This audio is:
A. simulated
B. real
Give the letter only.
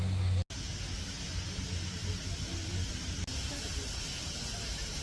B